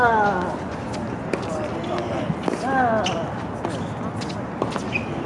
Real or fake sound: real